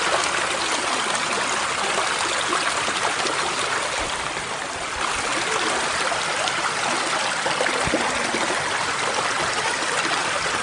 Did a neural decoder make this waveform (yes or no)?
no